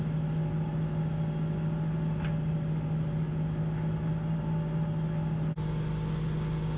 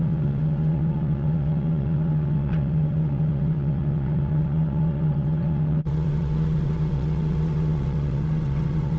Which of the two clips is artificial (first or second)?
second